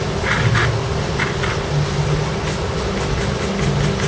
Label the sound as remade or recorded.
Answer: recorded